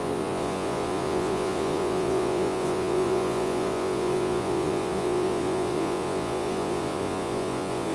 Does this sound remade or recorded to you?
remade